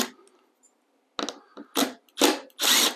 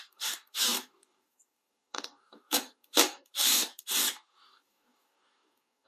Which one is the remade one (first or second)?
second